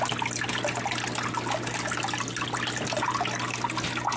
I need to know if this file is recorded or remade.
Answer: recorded